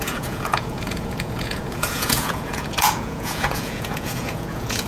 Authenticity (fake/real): fake